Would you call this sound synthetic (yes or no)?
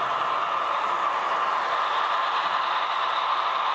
no